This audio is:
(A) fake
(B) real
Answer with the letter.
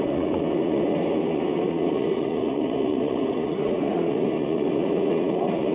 A